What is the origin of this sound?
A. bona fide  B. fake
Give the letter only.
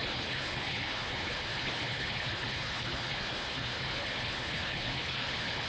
B